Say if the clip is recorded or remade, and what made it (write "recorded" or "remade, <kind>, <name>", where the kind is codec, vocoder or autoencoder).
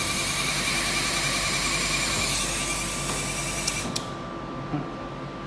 recorded